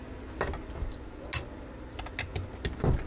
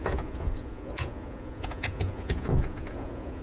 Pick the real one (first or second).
first